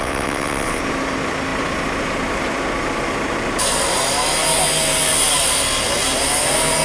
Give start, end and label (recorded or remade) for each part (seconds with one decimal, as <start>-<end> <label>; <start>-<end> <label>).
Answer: 0.0-0.8 remade; 0.8-6.8 recorded